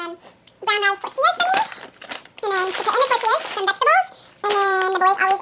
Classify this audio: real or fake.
fake